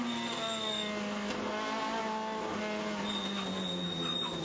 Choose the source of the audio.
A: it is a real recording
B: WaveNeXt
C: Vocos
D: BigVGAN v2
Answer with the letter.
A